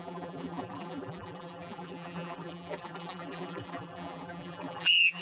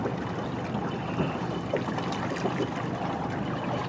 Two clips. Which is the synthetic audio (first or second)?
first